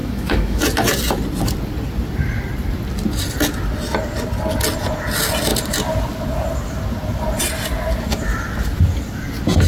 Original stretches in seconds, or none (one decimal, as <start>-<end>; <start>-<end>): 0.6-9.7